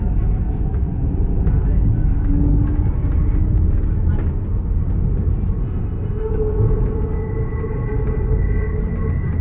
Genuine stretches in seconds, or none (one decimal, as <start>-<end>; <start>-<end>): 0.0-5.6; 6.3-9.4